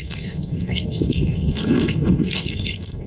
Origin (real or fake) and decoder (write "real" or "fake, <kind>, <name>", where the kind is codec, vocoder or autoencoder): fake, codec, SNAC